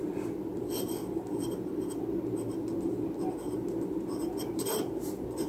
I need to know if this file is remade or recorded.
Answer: recorded